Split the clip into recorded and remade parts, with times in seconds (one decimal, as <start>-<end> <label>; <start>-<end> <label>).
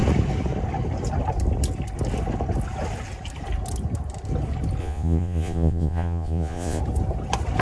0.0-4.8 recorded; 4.8-6.8 remade; 6.8-7.6 recorded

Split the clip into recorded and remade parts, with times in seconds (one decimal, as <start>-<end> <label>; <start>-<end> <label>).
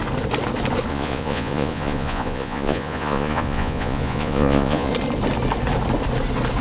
0.0-0.9 recorded; 0.9-4.9 remade; 4.9-6.6 recorded